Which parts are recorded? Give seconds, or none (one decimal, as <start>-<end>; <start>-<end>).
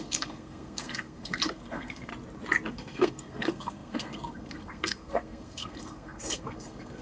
2.1-2.7